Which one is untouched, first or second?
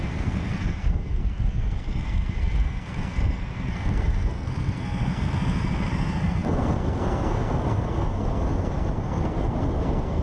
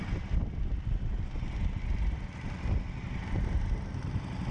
second